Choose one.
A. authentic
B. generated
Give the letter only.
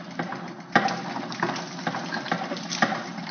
A